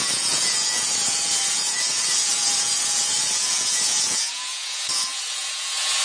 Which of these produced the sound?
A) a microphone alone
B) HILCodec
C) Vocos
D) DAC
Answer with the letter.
C